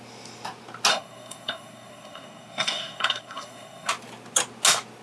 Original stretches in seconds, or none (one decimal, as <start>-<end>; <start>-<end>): 0.0-0.9; 3.9-5.0